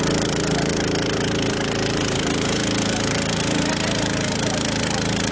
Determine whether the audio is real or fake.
fake